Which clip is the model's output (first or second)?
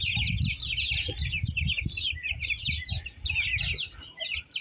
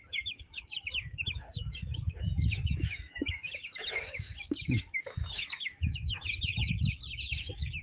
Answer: second